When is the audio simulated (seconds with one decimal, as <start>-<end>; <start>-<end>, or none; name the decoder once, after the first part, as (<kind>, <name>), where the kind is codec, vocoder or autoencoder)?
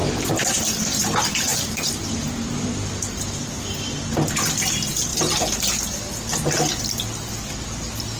0.0-0.6 (vocoder, BigVGAN v2); 1.5-3.5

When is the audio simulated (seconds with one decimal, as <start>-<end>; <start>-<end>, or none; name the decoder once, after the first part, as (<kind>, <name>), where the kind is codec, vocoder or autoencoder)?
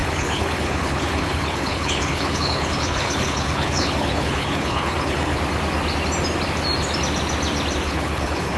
0.0-5.3 (codec, HILCodec); 7.8-8.6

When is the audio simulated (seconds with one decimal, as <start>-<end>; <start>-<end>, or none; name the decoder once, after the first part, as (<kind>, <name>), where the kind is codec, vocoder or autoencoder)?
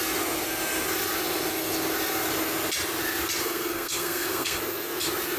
3.4-4.6 (codec, SNAC)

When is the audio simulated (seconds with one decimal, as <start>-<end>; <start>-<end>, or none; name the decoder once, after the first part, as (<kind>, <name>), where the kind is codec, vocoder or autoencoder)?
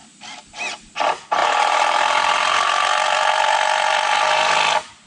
1.4-4.5 (vocoder, BigVGAN v2)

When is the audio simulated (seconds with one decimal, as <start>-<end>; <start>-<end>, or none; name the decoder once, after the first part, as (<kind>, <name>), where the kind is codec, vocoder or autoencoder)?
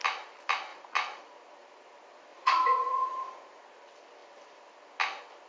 0.7-1.3 (vocoder, Vocos); 2.3-3.6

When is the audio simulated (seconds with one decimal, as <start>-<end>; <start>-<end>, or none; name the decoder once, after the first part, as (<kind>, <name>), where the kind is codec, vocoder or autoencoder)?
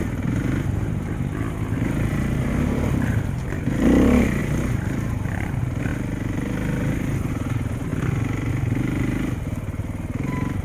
0.0-3.6 (vocoder, BigVGAN v2); 4.4-5.5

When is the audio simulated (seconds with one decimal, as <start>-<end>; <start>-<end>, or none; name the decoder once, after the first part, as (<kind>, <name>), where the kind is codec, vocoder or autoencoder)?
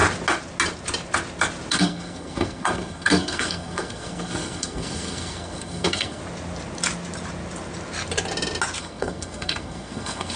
1.7-6.2 (codec, SNAC); 8.8-10.4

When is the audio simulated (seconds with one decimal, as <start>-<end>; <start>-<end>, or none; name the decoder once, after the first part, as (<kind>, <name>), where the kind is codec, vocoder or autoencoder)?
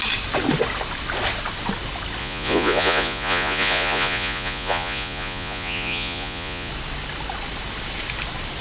2.2-6.7 (vocoder, Vocos)